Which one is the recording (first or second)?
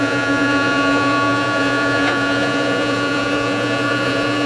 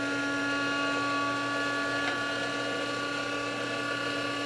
second